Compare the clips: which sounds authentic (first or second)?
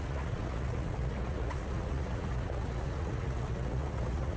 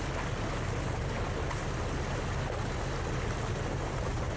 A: second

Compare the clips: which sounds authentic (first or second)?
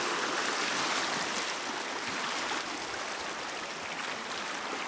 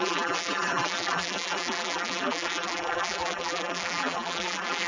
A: first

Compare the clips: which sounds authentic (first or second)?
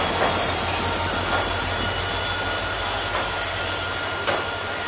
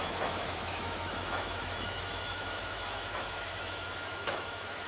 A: first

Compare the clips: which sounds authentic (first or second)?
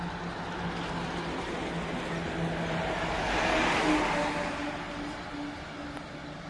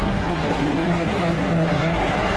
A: first